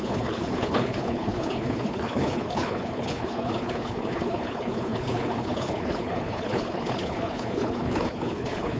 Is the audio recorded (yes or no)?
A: no